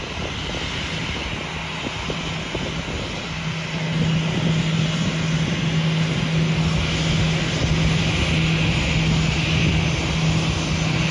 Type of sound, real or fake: real